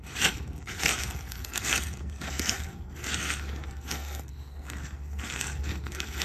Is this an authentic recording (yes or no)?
no